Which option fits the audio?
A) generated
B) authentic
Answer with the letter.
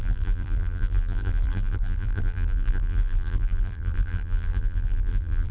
A